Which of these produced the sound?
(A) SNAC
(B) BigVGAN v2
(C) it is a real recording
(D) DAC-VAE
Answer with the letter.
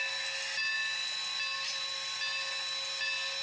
C